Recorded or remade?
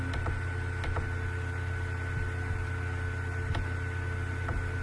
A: recorded